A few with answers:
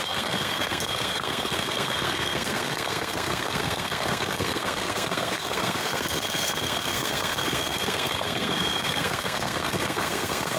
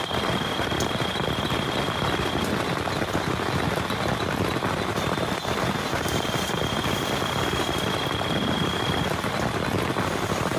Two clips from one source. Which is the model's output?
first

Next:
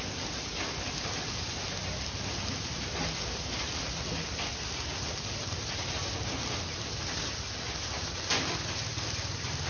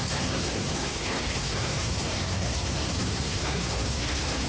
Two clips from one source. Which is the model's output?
second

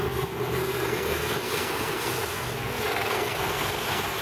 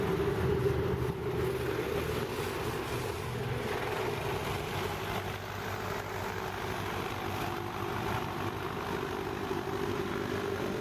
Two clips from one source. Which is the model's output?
first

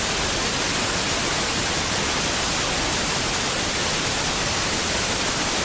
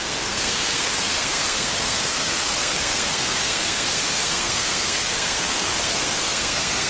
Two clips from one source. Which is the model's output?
second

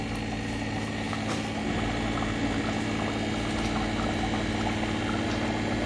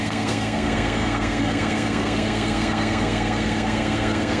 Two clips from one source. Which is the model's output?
second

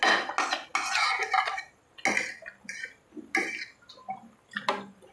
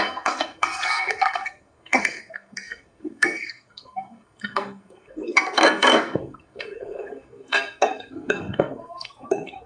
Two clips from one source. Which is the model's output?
second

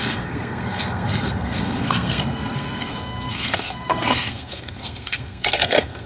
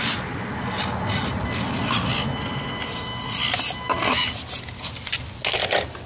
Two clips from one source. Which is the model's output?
first